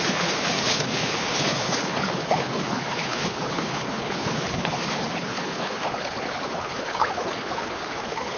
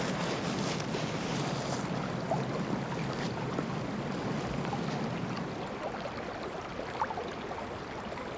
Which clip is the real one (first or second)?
second